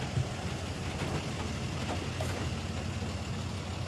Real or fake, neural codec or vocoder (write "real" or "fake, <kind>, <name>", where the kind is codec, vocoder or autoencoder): real